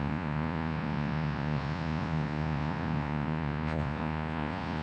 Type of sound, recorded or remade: remade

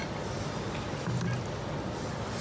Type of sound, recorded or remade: recorded